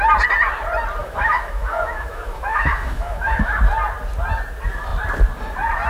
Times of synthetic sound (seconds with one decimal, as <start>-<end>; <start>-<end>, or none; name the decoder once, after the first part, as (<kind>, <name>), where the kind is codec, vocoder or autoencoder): 1.0-3.6 (autoencoder, DAC-VAE)